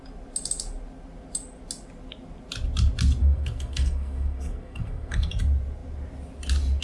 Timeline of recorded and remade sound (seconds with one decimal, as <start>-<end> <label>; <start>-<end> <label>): 0.0-3.2 recorded; 3.2-5.3 remade; 5.3-6.8 recorded